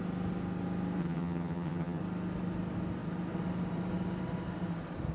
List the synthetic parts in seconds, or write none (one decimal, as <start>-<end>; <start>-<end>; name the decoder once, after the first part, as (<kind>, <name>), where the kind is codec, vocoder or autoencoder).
1.0-2.0 (vocoder, HiFi-GAN)